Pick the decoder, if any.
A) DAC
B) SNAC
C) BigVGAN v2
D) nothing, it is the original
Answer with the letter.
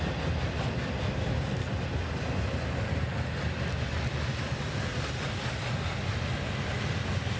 D